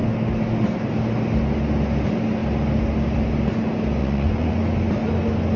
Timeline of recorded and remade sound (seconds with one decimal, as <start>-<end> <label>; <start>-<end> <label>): 0.0-4.0 recorded; 4.0-4.6 remade; 4.6-5.6 recorded